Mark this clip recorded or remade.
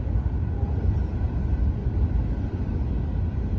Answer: recorded